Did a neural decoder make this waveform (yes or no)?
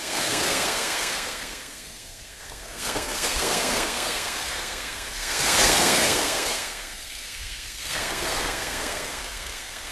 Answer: yes